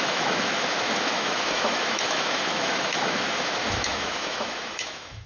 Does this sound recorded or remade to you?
remade